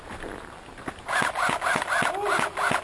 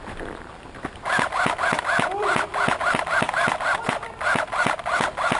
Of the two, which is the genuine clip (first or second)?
first